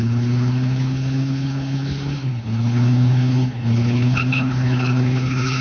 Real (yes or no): no